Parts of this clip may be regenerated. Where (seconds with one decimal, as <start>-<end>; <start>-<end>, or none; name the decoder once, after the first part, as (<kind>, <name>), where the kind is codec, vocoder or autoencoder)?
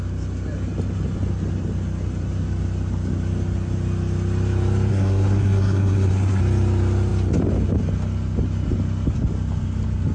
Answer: 4.9-6.4 (codec, SNAC)